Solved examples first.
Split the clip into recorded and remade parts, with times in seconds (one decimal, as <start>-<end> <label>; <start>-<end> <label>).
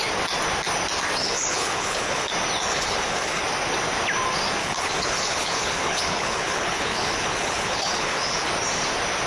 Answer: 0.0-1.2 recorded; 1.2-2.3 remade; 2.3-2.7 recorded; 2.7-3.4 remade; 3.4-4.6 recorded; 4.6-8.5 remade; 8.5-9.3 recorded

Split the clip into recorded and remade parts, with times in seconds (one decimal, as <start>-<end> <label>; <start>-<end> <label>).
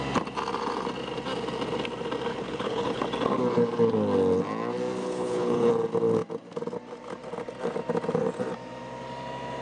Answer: 0.0-2.3 recorded; 2.3-3.0 remade; 3.0-5.0 recorded; 5.0-5.7 remade; 5.7-9.6 recorded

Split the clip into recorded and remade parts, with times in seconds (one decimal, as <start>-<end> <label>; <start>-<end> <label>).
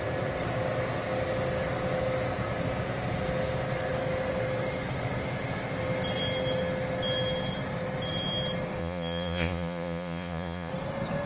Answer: 0.0-8.8 recorded; 8.8-10.7 remade; 10.7-11.3 recorded